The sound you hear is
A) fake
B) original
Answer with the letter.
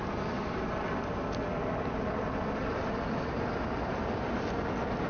B